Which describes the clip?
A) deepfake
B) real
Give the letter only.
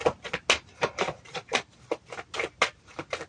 B